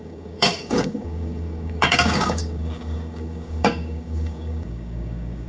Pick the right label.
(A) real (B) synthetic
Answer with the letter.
B